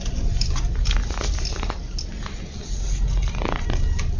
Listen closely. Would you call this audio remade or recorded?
recorded